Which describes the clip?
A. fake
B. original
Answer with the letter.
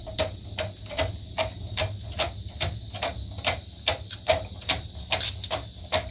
B